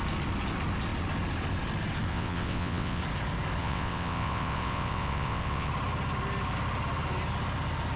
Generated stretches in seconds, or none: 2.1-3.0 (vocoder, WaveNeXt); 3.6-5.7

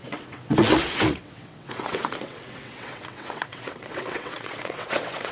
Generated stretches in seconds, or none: 0.0-5.3 (vocoder, WaveNeXt)

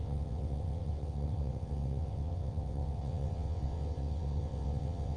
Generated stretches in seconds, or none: 0.0-5.2 (vocoder, WaveNeXt)

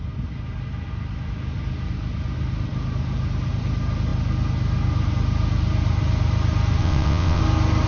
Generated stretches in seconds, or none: 6.8-7.4 (vocoder, WaveNeXt)

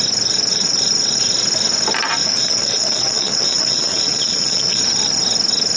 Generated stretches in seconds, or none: 2.2-4.8 (vocoder, WaveNeXt)

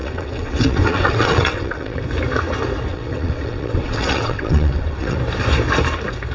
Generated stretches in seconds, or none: 0.0-2.0 (vocoder, WaveNeXt); 2.9-5.2